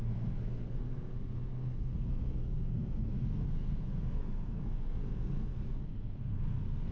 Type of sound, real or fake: fake